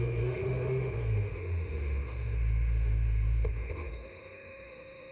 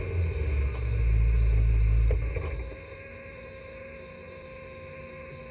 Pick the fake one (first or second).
first